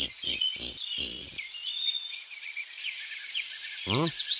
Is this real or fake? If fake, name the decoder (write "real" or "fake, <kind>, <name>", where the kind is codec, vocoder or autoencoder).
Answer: fake, vocoder, Vocos